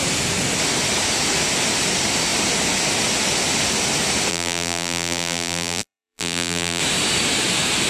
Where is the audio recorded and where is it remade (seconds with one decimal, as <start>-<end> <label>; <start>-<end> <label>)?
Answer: 0.0-4.3 recorded; 4.3-6.8 remade; 6.8-7.9 recorded